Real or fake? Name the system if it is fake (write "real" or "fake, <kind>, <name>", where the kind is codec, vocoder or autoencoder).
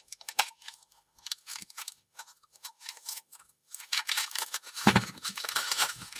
fake, autoencoder, DAC-VAE